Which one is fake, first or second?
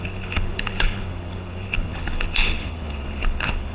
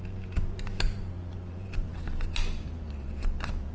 first